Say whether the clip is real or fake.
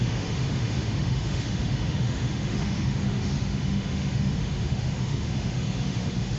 fake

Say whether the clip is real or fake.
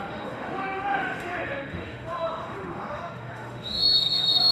fake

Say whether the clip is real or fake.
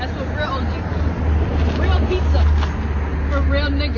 real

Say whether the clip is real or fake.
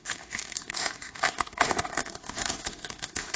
fake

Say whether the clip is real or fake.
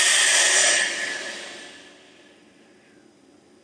real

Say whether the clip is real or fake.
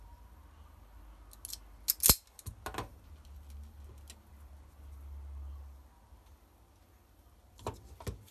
real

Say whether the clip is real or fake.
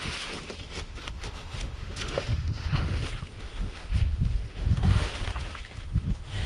fake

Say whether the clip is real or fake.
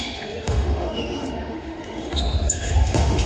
fake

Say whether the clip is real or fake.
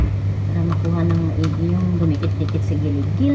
real